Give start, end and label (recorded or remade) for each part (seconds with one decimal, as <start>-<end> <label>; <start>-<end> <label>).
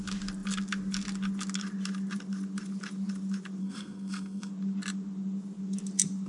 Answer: 0.0-3.6 recorded; 3.6-4.5 remade; 4.5-6.3 recorded